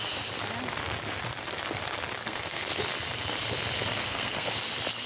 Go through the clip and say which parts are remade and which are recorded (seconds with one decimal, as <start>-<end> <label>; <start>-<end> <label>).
0.0-2.2 recorded; 2.2-2.8 remade; 2.8-4.0 recorded; 4.0-4.5 remade; 4.5-5.1 recorded